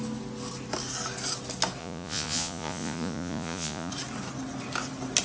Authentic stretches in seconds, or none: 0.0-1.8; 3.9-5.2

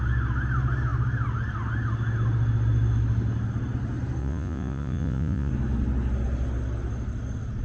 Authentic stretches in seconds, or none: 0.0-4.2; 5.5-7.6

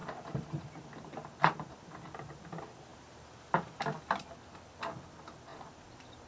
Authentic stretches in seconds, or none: 0.0-6.3